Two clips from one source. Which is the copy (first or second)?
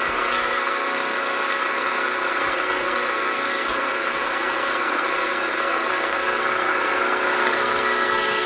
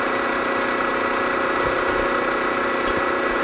first